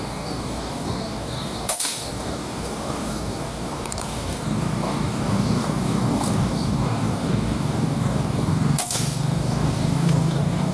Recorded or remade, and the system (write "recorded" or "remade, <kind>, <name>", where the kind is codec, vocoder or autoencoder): remade, codec, DAC